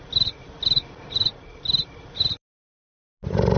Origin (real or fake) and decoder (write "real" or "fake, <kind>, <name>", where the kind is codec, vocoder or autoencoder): real